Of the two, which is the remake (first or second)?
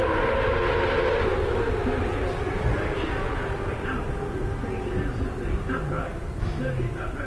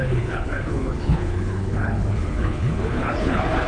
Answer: second